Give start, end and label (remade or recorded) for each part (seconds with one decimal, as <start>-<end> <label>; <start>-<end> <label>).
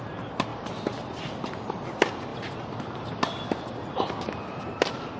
0.0-5.2 recorded